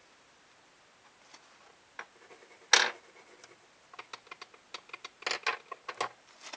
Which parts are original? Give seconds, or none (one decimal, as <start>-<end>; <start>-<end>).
0.0-6.6